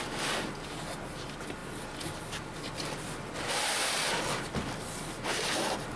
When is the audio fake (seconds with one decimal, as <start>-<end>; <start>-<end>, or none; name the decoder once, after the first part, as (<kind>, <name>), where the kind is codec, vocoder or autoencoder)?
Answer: none